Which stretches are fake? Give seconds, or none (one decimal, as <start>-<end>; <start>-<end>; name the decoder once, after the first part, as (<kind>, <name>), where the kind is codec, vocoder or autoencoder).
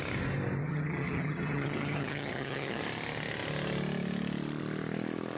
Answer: 0.6-2.8 (vocoder, HiFi-GAN)